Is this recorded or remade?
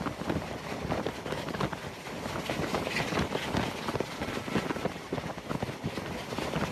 recorded